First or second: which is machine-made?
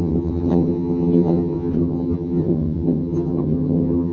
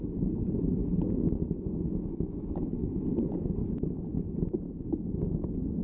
first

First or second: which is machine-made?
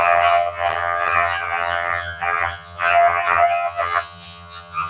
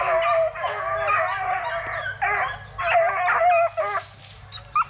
first